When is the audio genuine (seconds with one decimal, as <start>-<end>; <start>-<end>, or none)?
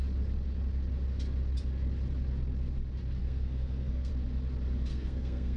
0.0-3.2; 4.1-4.9